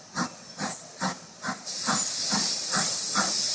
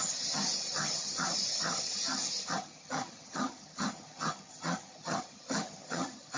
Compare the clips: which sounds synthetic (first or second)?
second